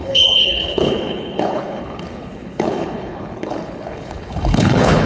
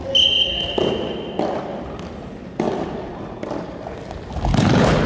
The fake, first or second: first